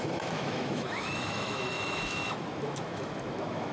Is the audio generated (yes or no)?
yes